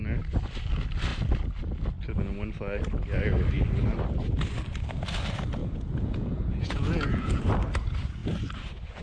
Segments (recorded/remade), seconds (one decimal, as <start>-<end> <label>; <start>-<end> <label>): 0.0-5.6 recorded; 5.6-7.4 remade; 7.4-9.0 recorded

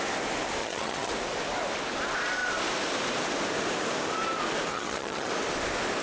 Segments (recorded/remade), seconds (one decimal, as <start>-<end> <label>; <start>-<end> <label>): 0.0-0.6 recorded; 0.6-1.1 remade; 1.1-4.7 recorded; 4.7-5.3 remade; 5.3-6.0 recorded

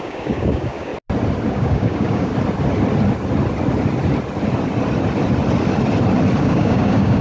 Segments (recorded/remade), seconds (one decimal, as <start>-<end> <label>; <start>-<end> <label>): 0.0-0.9 remade; 0.9-1.5 recorded; 1.5-2.3 remade; 2.3-6.4 recorded; 6.4-7.2 remade

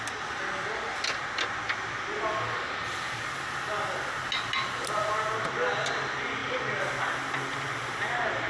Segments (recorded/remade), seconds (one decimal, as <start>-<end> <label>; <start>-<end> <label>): 0.0-8.5 recorded

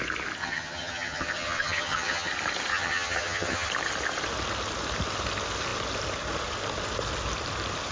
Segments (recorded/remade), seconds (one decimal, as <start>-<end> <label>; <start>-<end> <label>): 0.0-0.4 recorded; 0.4-2.3 remade; 2.3-2.7 recorded; 2.7-3.7 remade; 3.7-7.9 recorded

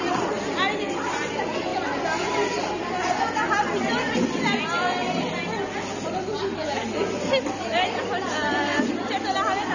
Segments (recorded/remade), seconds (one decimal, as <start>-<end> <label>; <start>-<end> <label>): 0.0-9.7 recorded

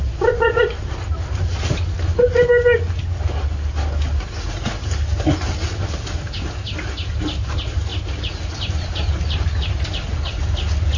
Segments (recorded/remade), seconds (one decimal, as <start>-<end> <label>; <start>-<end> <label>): 0.0-11.0 recorded

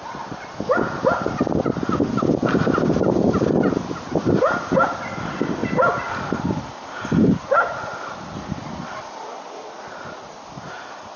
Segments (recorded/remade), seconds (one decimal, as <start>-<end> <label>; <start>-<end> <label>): 0.0-11.2 recorded